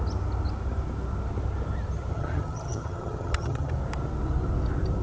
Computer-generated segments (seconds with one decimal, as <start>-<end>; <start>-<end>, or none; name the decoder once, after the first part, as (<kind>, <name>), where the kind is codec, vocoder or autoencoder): 2.1-3.7 (vocoder, HiFi-GAN)